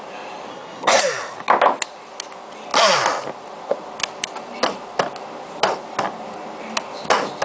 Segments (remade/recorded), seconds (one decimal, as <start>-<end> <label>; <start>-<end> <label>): 0.0-0.5 recorded; 0.5-1.0 remade; 1.0-7.4 recorded

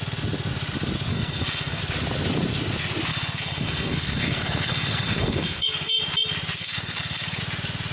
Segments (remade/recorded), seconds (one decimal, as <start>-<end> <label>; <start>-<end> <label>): 0.0-1.1 recorded; 1.1-1.8 remade; 1.8-3.1 recorded; 3.1-6.0 remade; 6.0-6.6 recorded; 6.6-7.4 remade; 7.4-7.9 recorded

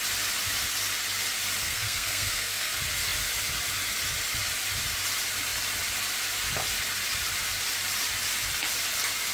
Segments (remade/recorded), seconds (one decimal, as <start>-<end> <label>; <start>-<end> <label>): 0.0-1.6 recorded; 1.6-2.7 remade; 2.7-9.3 recorded

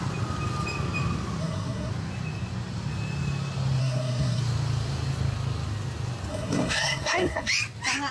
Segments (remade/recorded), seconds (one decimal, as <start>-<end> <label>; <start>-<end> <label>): 0.0-1.4 recorded; 1.4-1.9 remade; 1.9-3.8 recorded; 3.8-4.4 remade; 4.4-6.3 recorded; 6.3-7.5 remade; 7.5-8.1 recorded